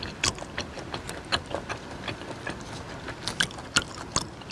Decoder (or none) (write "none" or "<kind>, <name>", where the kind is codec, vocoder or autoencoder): none